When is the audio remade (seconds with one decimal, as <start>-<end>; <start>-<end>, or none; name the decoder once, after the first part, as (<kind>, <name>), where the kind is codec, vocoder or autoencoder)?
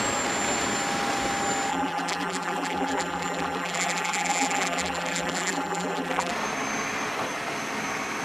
1.7-6.3 (vocoder, BigVGAN v2)